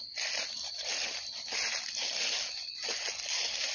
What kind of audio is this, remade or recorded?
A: recorded